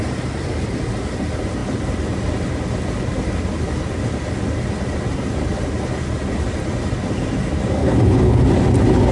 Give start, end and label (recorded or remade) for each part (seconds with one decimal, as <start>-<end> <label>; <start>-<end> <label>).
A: 0.0-7.8 recorded; 7.8-8.4 remade; 8.4-9.1 recorded